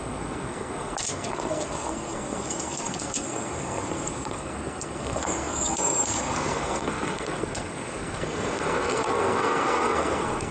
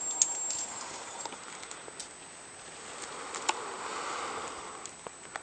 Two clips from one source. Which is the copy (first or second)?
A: first